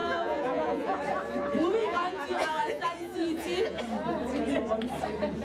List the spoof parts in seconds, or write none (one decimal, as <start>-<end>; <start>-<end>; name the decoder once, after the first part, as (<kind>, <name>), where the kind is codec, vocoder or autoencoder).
0.0-1.0 (vocoder, Vocos); 1.8-3.8